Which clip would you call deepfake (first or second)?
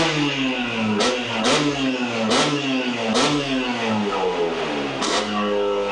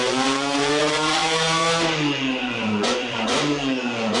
second